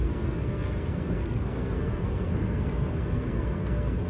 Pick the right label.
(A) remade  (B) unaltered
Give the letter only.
A